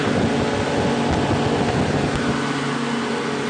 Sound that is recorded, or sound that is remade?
recorded